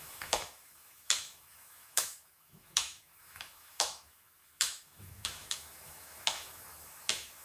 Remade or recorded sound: remade